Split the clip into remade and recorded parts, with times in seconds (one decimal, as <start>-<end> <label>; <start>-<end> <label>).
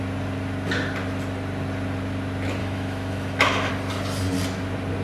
0.0-2.6 recorded; 2.6-3.7 remade; 3.7-5.0 recorded